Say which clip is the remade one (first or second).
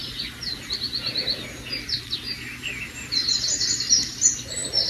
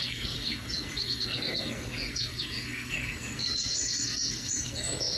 second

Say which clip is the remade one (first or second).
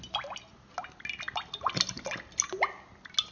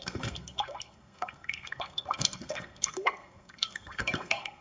second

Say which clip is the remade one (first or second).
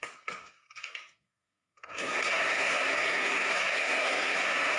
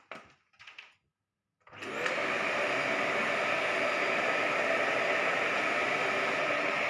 first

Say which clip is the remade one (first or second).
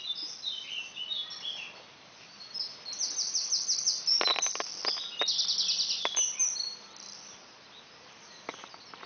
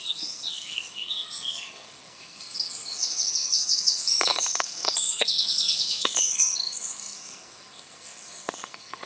second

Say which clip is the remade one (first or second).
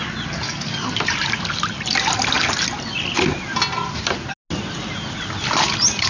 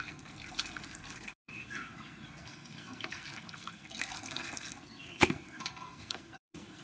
second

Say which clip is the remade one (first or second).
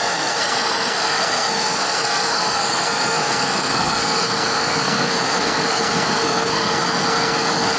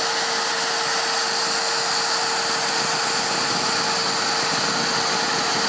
first